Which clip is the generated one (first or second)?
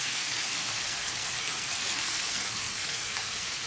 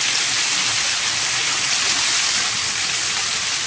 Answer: first